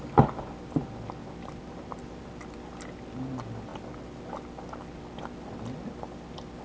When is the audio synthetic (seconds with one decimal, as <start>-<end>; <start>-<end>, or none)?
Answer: 1.2-2.0